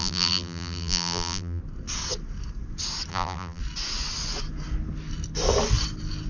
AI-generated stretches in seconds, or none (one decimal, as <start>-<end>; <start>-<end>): 0.0-1.6; 3.1-3.6